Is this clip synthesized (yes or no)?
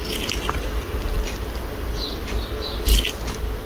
no